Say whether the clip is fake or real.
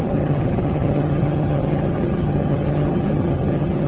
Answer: fake